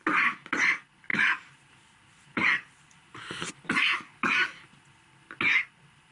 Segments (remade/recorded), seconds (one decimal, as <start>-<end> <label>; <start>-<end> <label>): 0.0-1.1 recorded; 1.1-3.5 remade; 3.5-6.1 recorded